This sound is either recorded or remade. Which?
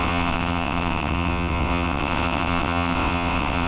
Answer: remade